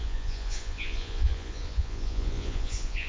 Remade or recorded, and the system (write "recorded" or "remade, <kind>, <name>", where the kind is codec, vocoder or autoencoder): remade, vocoder, Vocos